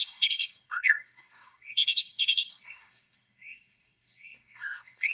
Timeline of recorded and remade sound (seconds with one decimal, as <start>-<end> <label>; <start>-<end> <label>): 0.0-5.1 remade